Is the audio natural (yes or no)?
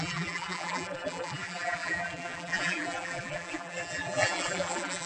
no